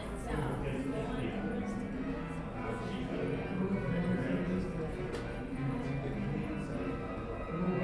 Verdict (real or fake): real